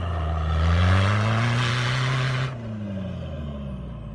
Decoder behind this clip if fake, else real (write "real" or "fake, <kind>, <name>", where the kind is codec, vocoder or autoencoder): real